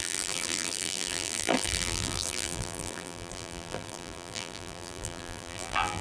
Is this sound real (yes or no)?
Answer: no